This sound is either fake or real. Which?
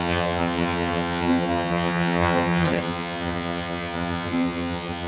fake